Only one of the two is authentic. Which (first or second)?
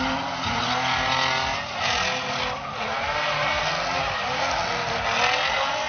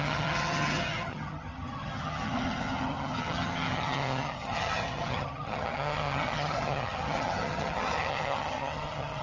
first